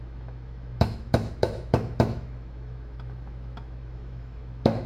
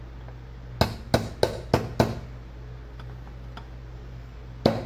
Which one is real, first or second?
second